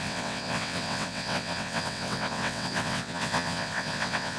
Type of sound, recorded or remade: remade